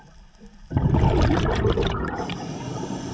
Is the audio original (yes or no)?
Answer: no